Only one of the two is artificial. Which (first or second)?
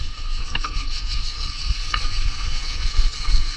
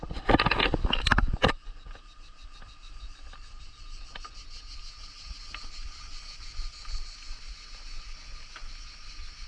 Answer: first